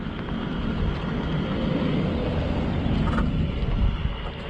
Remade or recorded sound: recorded